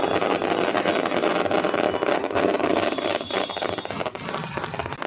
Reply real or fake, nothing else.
real